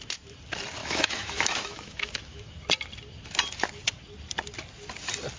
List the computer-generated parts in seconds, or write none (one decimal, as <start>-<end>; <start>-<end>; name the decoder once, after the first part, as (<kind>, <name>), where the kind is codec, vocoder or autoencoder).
0.8-2.5 (autoencoder, DAC-VAE)